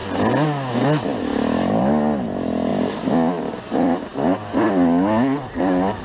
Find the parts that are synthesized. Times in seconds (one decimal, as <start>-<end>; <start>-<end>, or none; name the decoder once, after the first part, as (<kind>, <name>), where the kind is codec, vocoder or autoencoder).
none

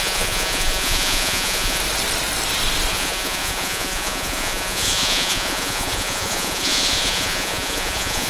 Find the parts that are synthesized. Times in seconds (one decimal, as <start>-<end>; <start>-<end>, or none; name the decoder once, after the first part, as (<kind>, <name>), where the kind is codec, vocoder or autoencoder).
0.0-1.8 (vocoder, Vocos); 2.9-8.3

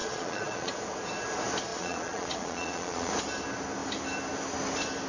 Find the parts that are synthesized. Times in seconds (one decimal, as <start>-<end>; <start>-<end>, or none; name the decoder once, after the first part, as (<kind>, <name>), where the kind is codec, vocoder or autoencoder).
0.0-0.7 (vocoder, Vocos); 1.7-3.1

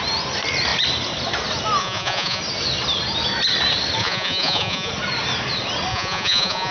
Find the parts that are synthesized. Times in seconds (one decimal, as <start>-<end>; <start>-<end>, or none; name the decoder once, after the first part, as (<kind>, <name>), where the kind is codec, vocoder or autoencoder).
1.8-2.4 (vocoder, Vocos); 4.0-4.9; 5.9-6.7

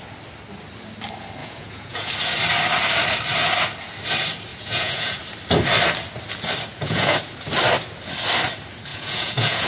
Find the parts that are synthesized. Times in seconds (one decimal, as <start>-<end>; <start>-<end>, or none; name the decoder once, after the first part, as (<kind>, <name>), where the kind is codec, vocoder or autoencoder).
1.4-2.1 (vocoder, Vocos); 4.5-5.2; 6.7-7.2; 8.9-9.7